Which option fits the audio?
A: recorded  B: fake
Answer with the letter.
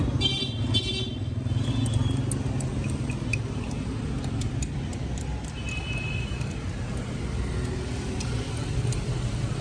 A